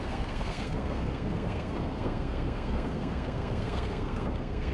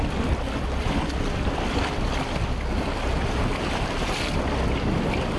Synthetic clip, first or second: first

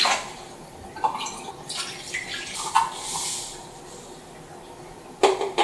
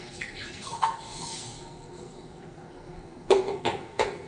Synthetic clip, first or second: second